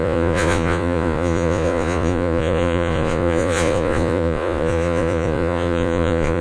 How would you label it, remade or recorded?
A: remade